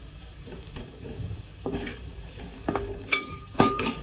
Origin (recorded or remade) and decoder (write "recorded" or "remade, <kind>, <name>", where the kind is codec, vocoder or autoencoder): remade, codec, DAC